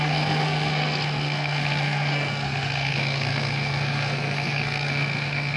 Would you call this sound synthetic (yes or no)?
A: yes